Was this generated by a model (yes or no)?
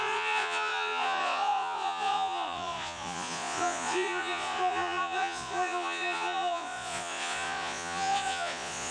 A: yes